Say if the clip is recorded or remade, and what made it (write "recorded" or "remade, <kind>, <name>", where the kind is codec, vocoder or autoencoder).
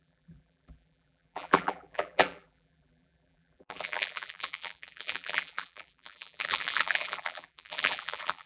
remade, vocoder, BigVGAN v2